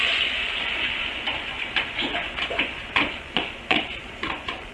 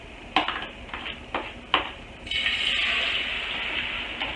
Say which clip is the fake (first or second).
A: first